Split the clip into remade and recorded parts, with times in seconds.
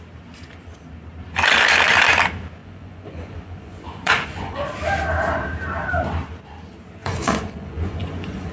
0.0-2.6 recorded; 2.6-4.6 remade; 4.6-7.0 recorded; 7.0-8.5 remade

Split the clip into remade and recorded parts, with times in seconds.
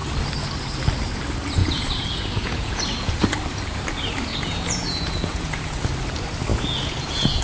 0.0-1.6 recorded; 1.6-3.3 remade; 3.3-4.3 recorded; 4.3-5.8 remade; 5.8-6.5 recorded; 6.5-7.4 remade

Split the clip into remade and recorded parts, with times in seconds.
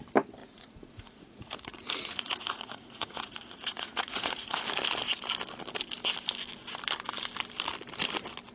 0.0-0.4 recorded; 0.4-4.6 remade; 4.6-8.5 recorded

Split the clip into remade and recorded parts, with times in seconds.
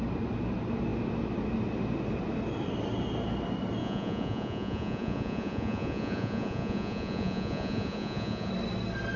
0.0-3.8 recorded; 3.8-8.5 remade; 8.5-9.2 recorded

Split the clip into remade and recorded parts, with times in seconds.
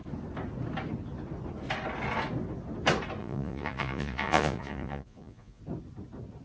0.0-3.2 recorded; 3.2-5.6 remade; 5.6-6.4 recorded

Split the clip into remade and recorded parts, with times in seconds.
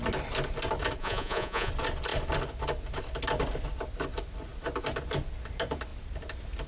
0.0-1.0 recorded; 1.0-1.7 remade; 1.7-6.7 recorded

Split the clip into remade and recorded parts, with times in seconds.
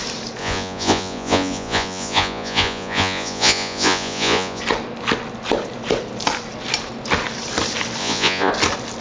0.0-0.4 recorded; 0.4-4.6 remade; 4.6-8.0 recorded; 8.0-8.5 remade; 8.5-9.0 recorded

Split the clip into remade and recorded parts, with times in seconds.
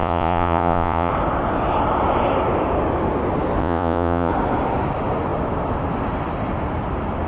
0.0-1.1 remade; 1.1-3.6 recorded; 3.6-4.3 remade; 4.3-7.3 recorded